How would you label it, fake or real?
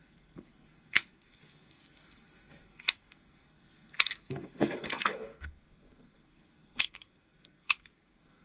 fake